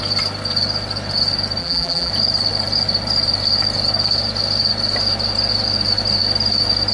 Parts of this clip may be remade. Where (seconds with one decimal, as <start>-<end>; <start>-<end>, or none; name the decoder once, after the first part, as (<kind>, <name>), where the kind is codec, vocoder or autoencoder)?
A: 1.6-2.1 (vocoder, BigVGAN v2)